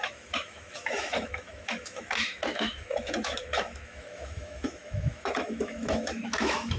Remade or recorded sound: remade